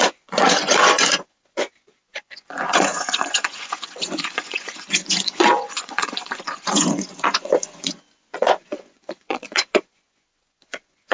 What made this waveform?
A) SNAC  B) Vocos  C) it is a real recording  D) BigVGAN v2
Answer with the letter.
B